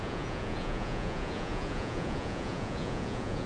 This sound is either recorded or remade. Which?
remade